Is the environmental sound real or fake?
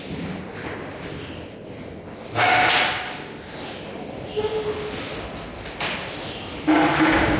real